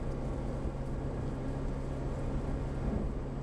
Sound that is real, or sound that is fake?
real